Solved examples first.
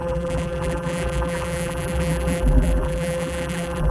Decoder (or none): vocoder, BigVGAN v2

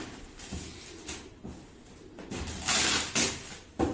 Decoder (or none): none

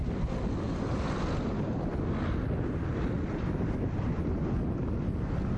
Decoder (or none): none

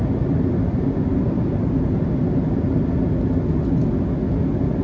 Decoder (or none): none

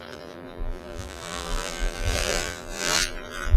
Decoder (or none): vocoder, BigVGAN v2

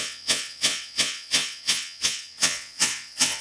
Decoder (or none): vocoder, WaveNeXt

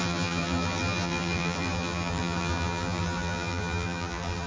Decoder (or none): vocoder, BigVGAN v2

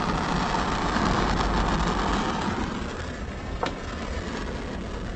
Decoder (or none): none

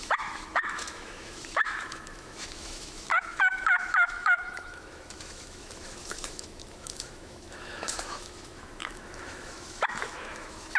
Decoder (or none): autoencoder, DAC-VAE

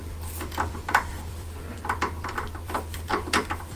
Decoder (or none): vocoder, BigVGAN v2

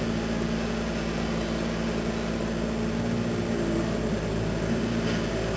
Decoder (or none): none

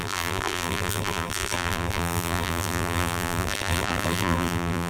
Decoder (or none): vocoder, BigVGAN v2